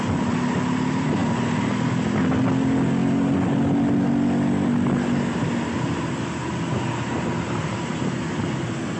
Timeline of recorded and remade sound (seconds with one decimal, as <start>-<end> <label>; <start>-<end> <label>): 0.0-9.0 recorded